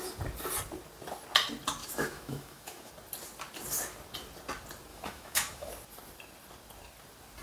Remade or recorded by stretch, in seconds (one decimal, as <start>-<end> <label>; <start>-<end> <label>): 0.0-1.8 recorded; 1.8-2.9 remade; 2.9-4.9 recorded; 4.9-5.7 remade; 5.7-7.4 recorded